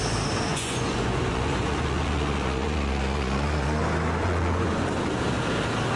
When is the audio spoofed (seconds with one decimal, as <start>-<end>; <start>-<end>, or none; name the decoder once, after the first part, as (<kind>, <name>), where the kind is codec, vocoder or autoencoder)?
0.5-3.8 (vocoder, Vocos); 4.2-5.0